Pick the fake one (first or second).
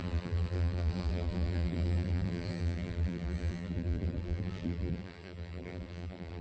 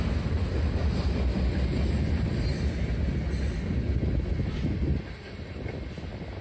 first